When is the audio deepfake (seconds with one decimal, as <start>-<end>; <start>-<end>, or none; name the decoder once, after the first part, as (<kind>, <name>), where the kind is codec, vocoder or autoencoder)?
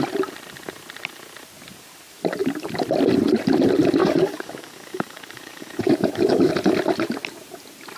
4.0-6.5 (codec, DAC)